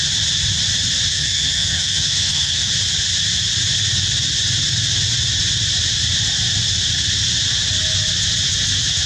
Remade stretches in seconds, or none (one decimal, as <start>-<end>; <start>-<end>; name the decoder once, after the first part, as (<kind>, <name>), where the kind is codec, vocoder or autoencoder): 1.1-2.7 (codec, SNAC)